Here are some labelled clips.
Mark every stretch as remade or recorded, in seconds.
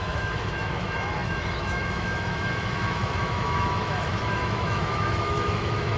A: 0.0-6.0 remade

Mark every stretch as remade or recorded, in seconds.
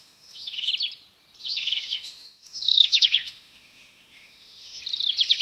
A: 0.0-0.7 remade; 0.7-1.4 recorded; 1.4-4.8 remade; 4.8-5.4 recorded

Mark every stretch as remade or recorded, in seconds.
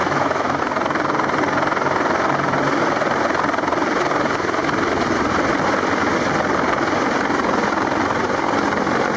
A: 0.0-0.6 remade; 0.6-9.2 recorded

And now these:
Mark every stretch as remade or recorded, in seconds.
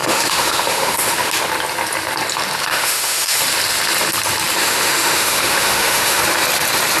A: 0.0-1.3 remade; 1.3-2.7 recorded; 2.7-3.4 remade; 3.4-4.6 recorded; 4.6-6.2 remade; 6.2-7.0 recorded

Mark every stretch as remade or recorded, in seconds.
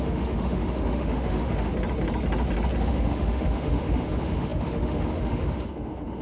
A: 0.0-1.7 remade; 1.7-2.8 recorded; 2.8-6.2 remade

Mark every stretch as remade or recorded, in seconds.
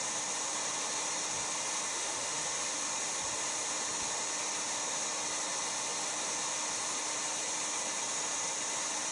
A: 0.0-1.9 recorded; 1.9-2.9 remade; 2.9-9.1 recorded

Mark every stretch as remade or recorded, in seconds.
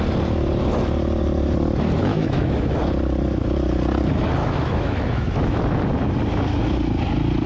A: 0.0-2.0 recorded; 2.0-2.8 remade; 2.8-4.4 recorded; 4.4-5.6 remade; 5.6-7.5 recorded